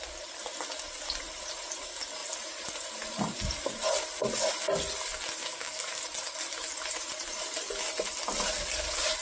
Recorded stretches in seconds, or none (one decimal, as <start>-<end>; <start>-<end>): 0.0-5.4; 6.0-9.2